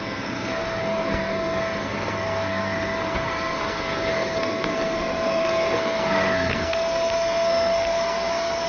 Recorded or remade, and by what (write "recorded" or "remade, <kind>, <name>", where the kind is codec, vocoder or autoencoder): remade, codec, SNAC